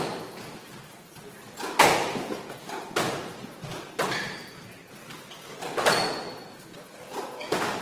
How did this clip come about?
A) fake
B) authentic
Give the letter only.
B